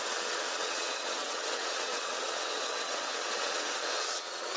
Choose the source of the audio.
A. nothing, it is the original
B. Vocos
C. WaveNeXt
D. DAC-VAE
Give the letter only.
C